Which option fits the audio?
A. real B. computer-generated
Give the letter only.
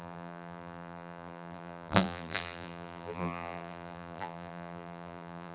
B